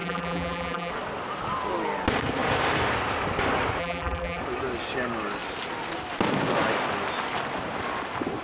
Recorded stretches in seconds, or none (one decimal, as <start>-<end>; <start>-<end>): 0.9-3.8; 4.4-8.4